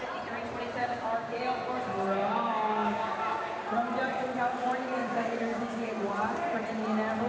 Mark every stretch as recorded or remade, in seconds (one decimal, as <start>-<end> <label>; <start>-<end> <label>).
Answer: 0.0-0.8 recorded; 0.8-1.4 remade; 1.4-2.2 recorded; 2.2-3.1 remade; 3.1-5.0 recorded; 5.0-5.9 remade; 5.9-7.3 recorded